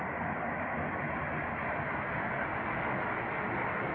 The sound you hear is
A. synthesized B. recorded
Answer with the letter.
B